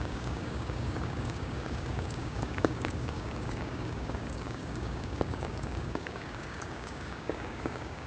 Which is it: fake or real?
fake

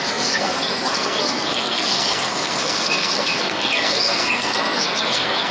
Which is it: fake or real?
fake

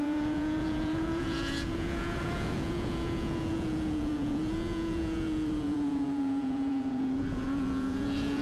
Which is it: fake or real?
fake